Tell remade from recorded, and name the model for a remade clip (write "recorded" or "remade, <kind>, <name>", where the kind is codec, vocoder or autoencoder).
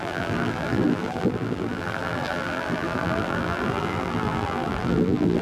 remade, vocoder, BigVGAN v2